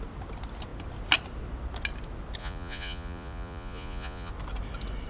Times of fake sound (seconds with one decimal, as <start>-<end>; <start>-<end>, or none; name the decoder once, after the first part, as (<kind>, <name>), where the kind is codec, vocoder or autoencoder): 2.4-4.3 (vocoder, Vocos)